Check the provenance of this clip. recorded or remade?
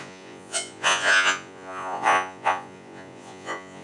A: remade